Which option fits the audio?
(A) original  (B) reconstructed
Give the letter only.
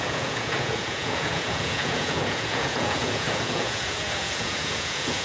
B